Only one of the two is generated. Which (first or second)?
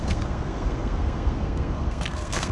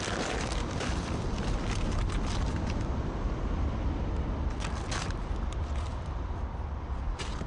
first